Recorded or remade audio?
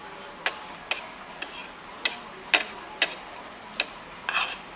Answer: recorded